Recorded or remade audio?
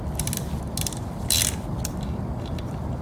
recorded